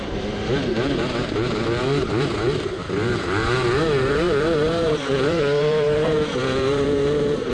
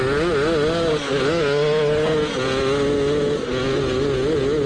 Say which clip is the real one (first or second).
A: second